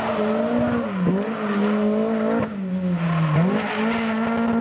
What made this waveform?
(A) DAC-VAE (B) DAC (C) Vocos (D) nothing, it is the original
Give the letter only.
D